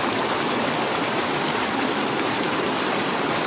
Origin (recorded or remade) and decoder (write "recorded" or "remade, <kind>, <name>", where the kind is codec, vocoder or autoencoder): remade, vocoder, BigVGAN v2